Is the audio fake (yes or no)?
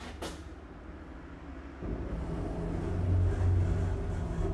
no